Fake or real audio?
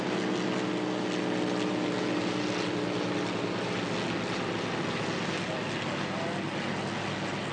real